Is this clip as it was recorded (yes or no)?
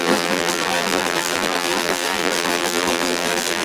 no